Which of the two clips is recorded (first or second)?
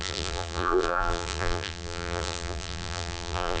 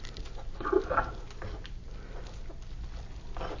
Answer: second